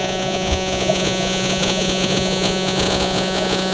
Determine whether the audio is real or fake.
fake